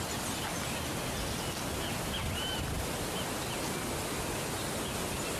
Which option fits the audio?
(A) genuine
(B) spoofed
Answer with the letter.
A